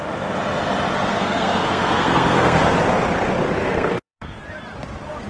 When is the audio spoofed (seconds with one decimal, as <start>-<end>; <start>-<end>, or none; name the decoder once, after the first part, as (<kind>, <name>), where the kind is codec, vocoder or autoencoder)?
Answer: 1.1-2.6 (codec, SNAC); 3.6-4.4